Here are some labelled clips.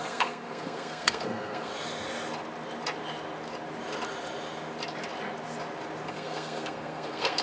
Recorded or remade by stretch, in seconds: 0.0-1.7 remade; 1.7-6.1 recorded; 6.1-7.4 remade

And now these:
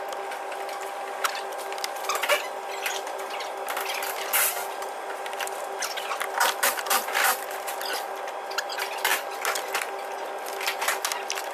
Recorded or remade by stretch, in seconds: 0.0-11.5 recorded

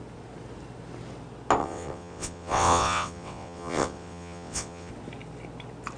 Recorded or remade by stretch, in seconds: 0.0-1.6 recorded; 1.6-4.9 remade; 4.9-6.0 recorded

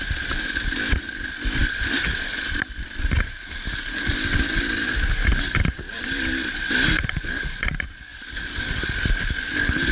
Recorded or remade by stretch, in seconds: 0.0-9.9 recorded